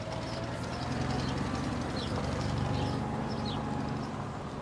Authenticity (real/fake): real